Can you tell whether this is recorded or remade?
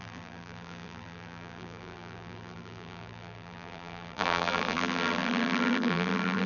remade